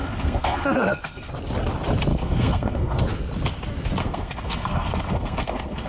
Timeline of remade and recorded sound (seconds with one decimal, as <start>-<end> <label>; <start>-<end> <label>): 0.0-1.3 remade; 1.3-2.1 recorded; 2.1-3.0 remade; 3.0-4.0 recorded; 4.0-5.9 remade